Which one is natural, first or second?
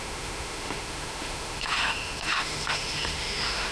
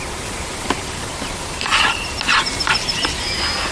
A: second